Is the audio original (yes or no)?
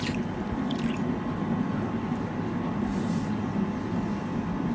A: yes